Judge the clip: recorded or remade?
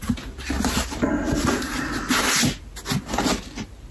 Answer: recorded